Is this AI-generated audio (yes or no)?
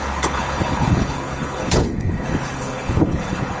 yes